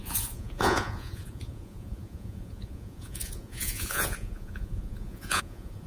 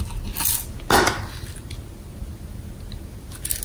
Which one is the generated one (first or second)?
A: first